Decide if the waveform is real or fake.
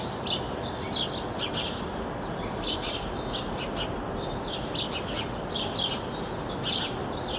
real